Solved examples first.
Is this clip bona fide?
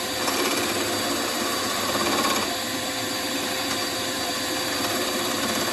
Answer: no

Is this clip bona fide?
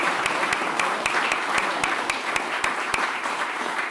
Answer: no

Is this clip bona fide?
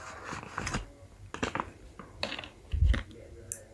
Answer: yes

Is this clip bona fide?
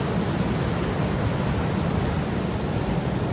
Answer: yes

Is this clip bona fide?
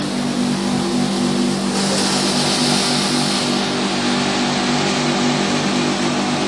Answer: yes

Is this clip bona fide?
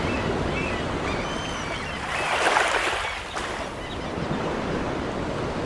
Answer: no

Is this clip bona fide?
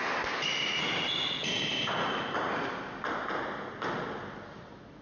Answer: yes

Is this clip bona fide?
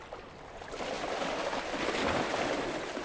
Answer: yes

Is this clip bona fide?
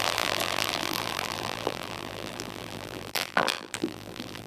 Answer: no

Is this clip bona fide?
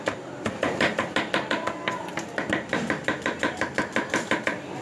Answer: no